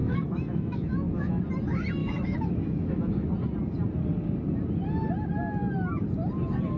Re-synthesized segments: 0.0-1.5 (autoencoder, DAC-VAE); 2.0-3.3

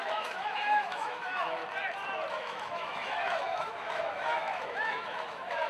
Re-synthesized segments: 0.0-1.6 (autoencoder, DAC-VAE); 2.3-5.7

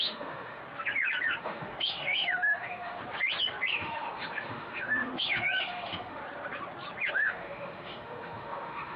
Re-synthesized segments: 0.0-0.6 (autoencoder, DAC-VAE); 1.4-3.0; 3.7-6.2; 7.1-9.0